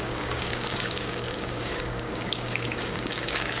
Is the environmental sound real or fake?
fake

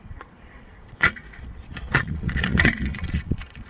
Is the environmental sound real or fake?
fake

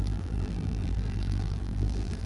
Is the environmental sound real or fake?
fake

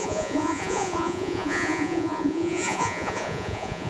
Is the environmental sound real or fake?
fake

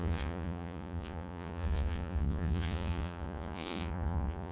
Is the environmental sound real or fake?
fake